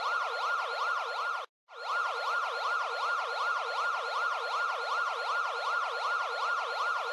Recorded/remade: recorded